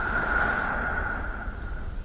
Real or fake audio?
real